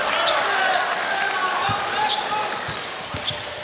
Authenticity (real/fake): real